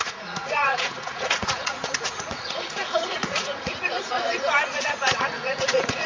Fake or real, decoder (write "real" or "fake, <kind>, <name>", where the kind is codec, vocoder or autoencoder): fake, vocoder, Vocos